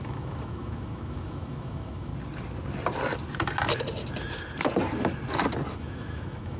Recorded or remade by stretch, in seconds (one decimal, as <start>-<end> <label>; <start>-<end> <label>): 0.0-2.1 remade; 2.1-5.7 recorded; 5.7-6.6 remade